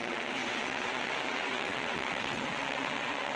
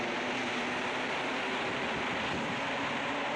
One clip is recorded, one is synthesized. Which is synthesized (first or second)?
first